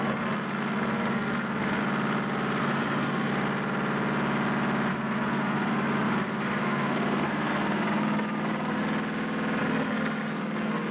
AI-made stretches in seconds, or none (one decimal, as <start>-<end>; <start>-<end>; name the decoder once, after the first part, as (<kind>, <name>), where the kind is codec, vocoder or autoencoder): 0.0-1.8 (codec, SNAC); 2.6-3.3; 4.9-8.8; 9.6-10.9